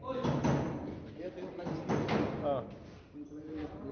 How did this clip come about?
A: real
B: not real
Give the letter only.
A